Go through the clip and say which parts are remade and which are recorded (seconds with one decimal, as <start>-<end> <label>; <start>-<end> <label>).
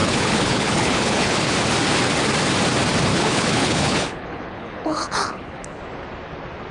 0.0-1.5 remade; 1.5-3.1 recorded; 3.1-5.8 remade; 5.8-6.7 recorded